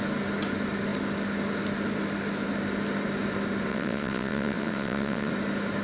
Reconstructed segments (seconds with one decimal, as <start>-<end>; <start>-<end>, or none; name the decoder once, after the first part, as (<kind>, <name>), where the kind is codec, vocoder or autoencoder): 3.7-5.3 (vocoder, WaveNeXt)